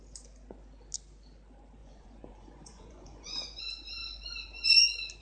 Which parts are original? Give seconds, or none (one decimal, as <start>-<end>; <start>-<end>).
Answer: 0.0-1.8; 3.6-5.2